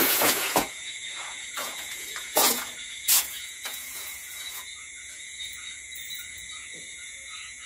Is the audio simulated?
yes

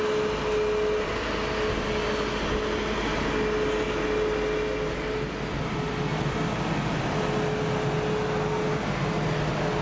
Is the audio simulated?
no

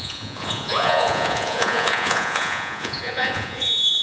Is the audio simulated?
yes